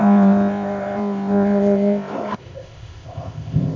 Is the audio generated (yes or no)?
yes